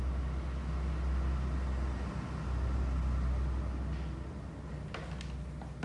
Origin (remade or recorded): recorded